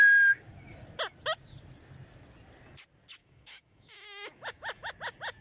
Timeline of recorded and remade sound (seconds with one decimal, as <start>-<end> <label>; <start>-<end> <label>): 0.0-3.2 recorded; 3.2-4.9 remade; 4.9-5.4 recorded